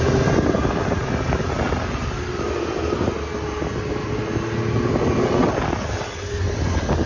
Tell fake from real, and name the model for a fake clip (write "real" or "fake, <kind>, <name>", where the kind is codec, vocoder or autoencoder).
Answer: real